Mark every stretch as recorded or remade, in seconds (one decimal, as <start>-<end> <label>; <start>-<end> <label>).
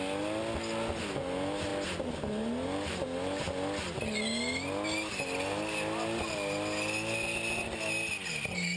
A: 0.0-8.8 recorded